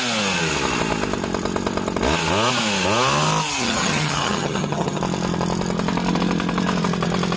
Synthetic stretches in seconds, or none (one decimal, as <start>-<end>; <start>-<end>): 3.5-5.0